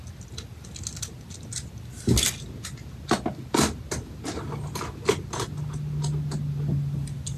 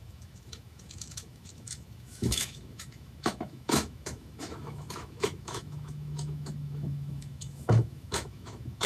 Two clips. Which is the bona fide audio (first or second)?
first